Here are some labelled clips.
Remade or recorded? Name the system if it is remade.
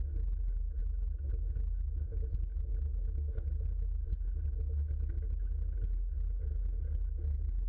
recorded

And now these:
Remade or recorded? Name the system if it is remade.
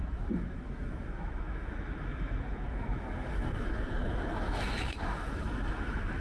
remade, autoencoder, DAC-VAE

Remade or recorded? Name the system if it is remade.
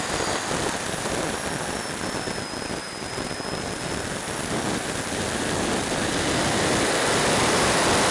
recorded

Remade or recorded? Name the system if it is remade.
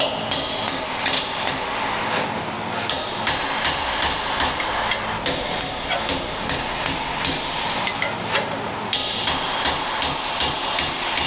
recorded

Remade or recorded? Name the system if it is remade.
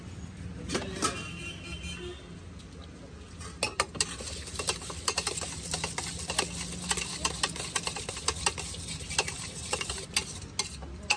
recorded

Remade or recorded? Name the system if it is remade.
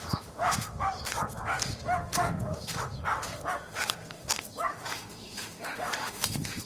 remade, autoencoder, DAC-VAE